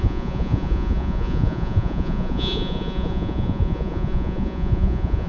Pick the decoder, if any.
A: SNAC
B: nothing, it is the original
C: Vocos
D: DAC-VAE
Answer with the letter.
C